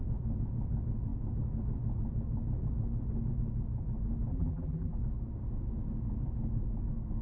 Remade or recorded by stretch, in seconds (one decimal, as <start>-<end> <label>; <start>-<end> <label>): 0.0-4.3 recorded; 4.3-4.9 remade; 4.9-7.2 recorded